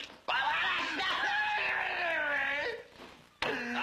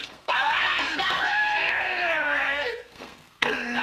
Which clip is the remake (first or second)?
second